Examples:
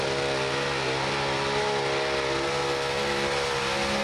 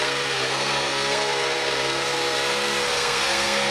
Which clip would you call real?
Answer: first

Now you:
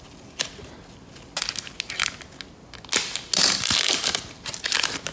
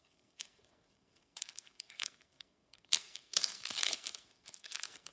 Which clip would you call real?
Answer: first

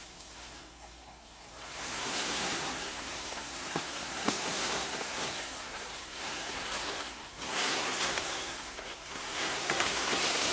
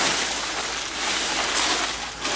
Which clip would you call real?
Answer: second